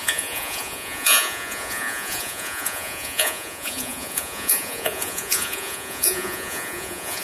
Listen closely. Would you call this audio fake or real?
fake